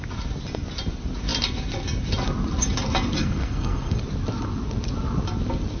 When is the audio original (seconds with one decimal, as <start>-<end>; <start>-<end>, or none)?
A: 0.0-3.2; 4.0-5.8